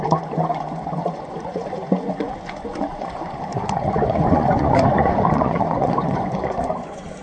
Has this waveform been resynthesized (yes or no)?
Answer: yes